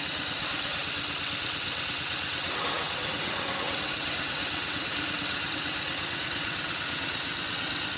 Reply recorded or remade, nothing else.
remade